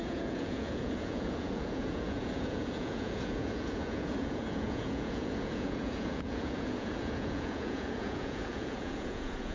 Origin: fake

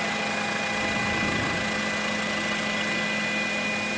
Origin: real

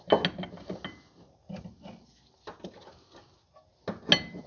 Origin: real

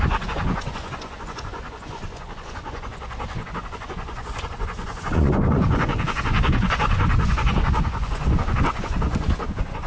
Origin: fake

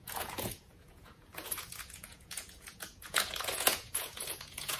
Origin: fake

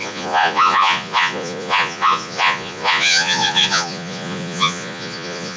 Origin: fake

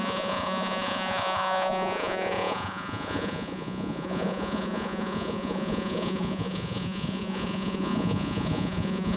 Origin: fake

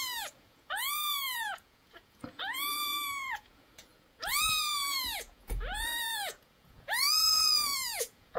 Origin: fake